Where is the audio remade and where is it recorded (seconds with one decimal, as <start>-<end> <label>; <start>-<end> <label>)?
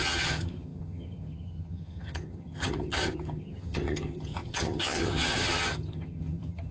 0.0-6.7 remade